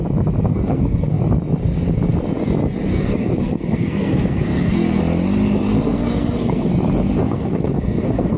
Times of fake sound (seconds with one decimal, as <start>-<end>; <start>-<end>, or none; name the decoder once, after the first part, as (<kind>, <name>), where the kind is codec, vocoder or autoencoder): 0.5-1.2 (codec, SNAC); 2.9-5.0; 5.7-6.7; 7.2-8.4